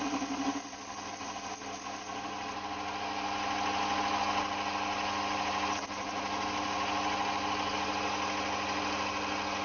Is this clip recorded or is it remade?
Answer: recorded